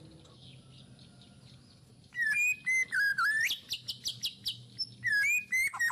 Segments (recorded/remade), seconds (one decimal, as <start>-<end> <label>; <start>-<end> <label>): 0.0-5.9 recorded